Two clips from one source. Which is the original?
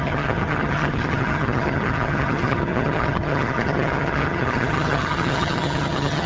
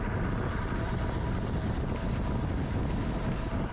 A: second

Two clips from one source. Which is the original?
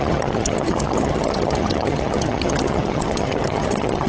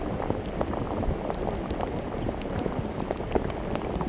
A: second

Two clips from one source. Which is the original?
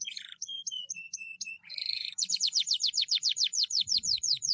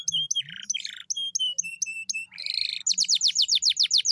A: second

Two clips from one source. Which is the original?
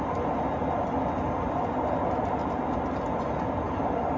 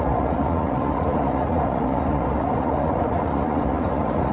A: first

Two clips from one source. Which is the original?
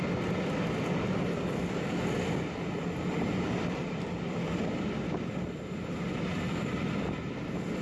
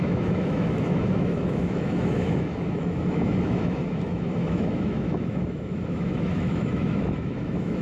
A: first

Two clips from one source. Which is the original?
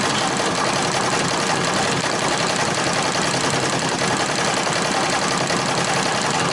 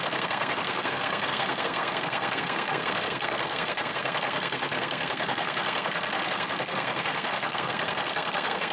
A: first